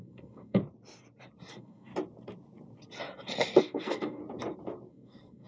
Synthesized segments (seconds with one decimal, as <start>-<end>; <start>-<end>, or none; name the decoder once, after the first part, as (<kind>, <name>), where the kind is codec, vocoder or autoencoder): 0.0-0.6 (codec, SNAC); 1.5-1.9; 3.6-4.2; 4.9-5.5